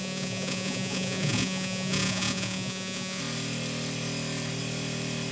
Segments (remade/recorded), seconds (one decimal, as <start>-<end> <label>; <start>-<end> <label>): 0.0-3.2 remade; 3.2-5.3 recorded

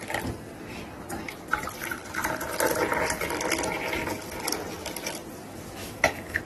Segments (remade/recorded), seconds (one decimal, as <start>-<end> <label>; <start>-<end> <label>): 0.0-5.8 recorded; 5.8-6.4 remade

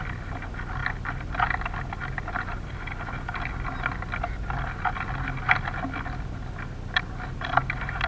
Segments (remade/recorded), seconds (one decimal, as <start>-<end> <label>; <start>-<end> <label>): 0.0-8.1 recorded

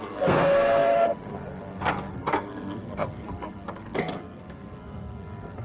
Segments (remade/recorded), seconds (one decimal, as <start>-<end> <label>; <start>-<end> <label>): 0.0-5.6 remade

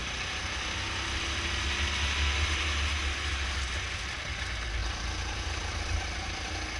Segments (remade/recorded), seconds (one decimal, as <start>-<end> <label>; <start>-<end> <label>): 0.0-6.8 recorded

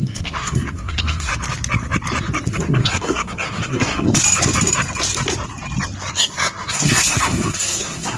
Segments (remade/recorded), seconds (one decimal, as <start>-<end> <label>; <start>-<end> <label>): 0.0-1.3 remade; 1.3-2.5 recorded; 2.5-4.2 remade; 4.2-6.1 recorded; 6.1-8.2 remade

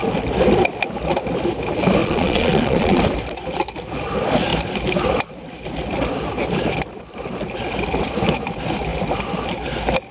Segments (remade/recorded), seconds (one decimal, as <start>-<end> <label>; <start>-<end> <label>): 0.0-2.0 recorded; 2.0-3.0 remade; 3.0-10.1 recorded

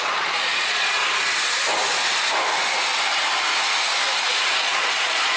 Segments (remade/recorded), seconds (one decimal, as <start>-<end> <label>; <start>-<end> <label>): 0.0-1.0 remade; 1.0-4.2 recorded; 4.2-5.4 remade